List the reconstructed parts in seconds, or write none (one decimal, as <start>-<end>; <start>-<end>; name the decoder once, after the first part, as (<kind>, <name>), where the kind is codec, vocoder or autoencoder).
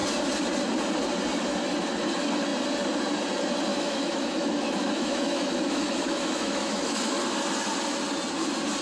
3.7-7.2 (autoencoder, DAC-VAE)